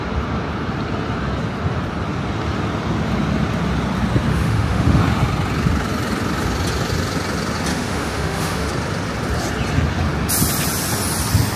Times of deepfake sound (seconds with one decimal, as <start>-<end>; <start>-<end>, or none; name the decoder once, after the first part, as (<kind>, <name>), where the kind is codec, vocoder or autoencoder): 4.3-5.0 (autoencoder, DAC-VAE); 7.7-8.7